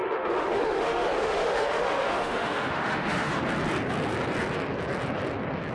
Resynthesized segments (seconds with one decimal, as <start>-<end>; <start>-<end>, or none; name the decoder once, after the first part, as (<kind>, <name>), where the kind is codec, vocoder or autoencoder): 0.0-3.4 (autoencoder, DAC-VAE)